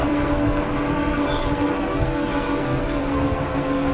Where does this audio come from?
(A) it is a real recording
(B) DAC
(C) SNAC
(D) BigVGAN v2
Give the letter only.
C